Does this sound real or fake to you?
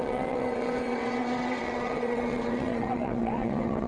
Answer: fake